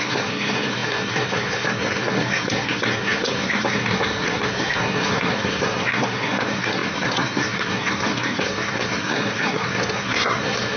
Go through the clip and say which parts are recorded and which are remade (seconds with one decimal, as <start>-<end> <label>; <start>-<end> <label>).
0.0-10.8 remade